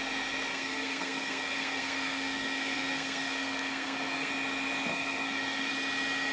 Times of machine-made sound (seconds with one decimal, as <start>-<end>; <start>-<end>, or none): 0.5-4.3; 4.9-5.7